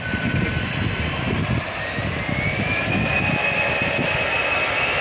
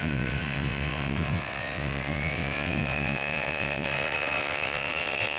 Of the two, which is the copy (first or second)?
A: second